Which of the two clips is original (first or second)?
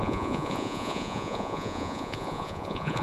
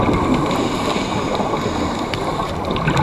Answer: second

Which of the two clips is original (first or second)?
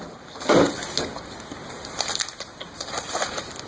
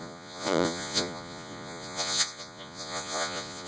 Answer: first